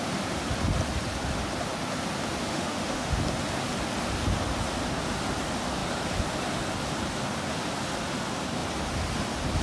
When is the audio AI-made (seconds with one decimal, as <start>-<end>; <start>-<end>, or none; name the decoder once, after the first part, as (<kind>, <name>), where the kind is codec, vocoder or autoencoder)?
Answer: 2.5-3.2 (autoencoder, DAC-VAE)